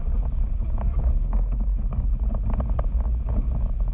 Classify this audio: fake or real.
real